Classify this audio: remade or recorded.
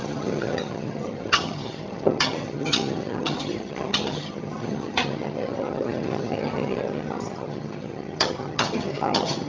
remade